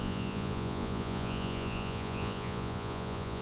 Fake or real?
fake